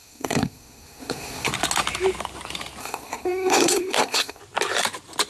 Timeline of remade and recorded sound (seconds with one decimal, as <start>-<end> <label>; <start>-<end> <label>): 0.0-1.5 remade; 1.5-2.8 recorded; 2.8-4.4 remade; 4.4-5.3 recorded